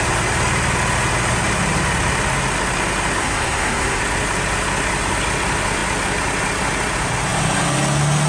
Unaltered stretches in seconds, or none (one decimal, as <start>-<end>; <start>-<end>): 0.0-3.2; 4.0-8.3